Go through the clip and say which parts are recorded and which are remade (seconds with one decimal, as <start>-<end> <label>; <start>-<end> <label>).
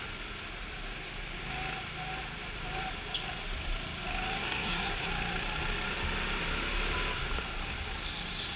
0.0-4.4 recorded; 4.4-5.1 remade; 5.1-8.6 recorded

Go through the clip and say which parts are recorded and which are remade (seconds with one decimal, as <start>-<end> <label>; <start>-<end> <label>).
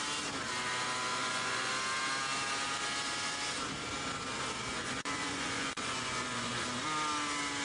0.0-1.1 recorded; 1.1-1.7 remade; 1.7-4.7 recorded; 4.7-6.5 remade; 6.5-7.6 recorded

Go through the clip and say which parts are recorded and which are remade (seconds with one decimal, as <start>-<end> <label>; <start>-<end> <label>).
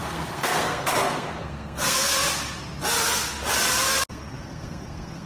0.0-2.1 remade; 2.1-4.1 recorded; 4.1-5.3 remade